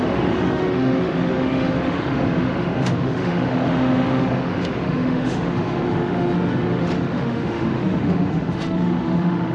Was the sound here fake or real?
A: fake